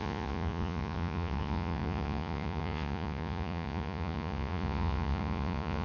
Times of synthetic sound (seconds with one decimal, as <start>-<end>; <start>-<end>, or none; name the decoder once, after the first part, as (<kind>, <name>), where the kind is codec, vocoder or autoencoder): 0.0-5.8 (vocoder, Vocos)